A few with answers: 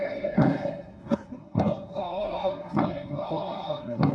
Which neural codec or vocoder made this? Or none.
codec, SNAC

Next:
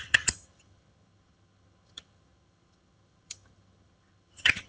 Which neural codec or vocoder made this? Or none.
vocoder, HiFi-GAN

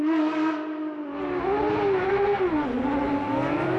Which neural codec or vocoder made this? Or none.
none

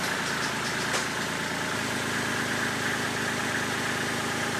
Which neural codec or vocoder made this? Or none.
none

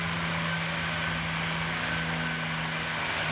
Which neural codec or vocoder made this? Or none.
none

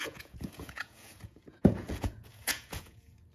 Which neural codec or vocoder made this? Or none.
vocoder, Vocos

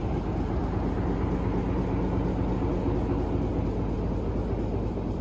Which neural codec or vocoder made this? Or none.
none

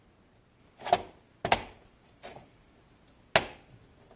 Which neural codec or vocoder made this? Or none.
none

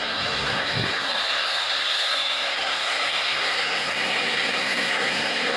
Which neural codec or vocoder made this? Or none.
codec, SNAC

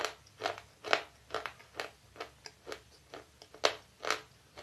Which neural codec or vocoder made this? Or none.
none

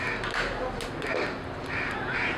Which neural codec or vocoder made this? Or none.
none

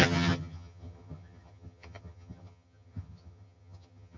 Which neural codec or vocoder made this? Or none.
vocoder, HiFi-GAN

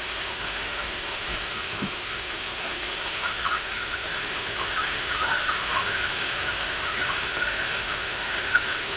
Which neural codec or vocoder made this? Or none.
autoencoder, DAC-VAE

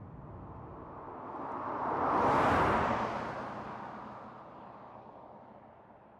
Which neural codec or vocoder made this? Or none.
none